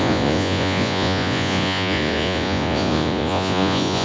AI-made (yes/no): yes